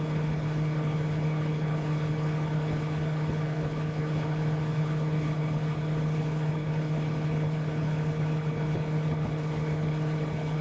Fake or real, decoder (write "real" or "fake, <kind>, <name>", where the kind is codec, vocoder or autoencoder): fake, codec, HILCodec